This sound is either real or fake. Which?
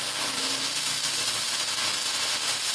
real